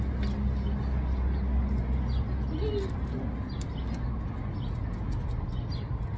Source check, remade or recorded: recorded